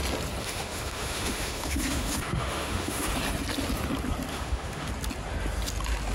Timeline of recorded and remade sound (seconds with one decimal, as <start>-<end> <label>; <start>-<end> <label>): 0.0-0.4 recorded; 0.4-3.1 remade; 3.1-4.3 recorded; 4.3-4.9 remade; 4.9-6.1 recorded